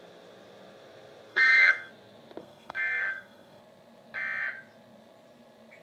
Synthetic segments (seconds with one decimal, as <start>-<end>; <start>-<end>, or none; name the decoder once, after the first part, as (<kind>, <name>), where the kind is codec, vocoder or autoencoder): 1.3-1.9 (codec, SNAC); 2.4-3.6